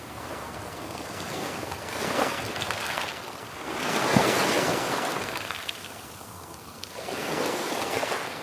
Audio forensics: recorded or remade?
remade